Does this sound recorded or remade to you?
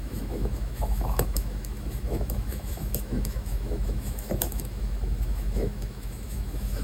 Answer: remade